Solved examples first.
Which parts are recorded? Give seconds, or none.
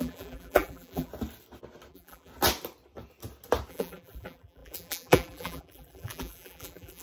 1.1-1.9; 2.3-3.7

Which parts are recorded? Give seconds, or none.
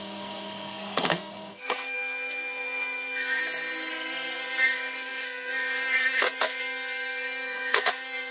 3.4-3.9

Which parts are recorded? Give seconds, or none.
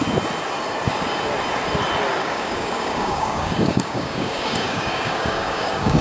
0.0-2.2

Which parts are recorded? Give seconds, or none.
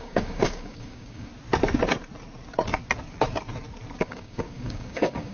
1.3-4.0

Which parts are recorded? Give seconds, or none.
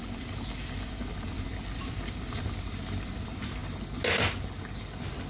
3.6-4.2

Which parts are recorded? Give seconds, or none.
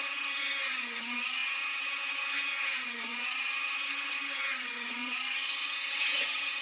none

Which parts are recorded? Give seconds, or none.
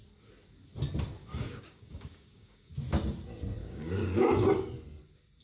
0.0-1.2; 2.7-3.6; 4.7-5.4